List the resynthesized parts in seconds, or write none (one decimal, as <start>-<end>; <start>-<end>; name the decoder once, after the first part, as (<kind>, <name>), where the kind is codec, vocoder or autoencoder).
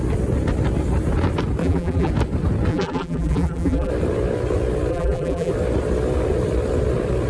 1.6-2.1 (vocoder, BigVGAN v2); 2.7-3.9; 4.9-5.5